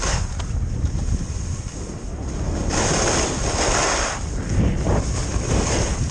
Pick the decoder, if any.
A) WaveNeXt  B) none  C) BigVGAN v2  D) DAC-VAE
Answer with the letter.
B